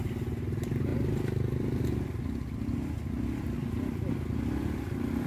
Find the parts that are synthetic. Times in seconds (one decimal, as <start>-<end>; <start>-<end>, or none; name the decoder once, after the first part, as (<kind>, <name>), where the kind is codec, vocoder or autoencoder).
none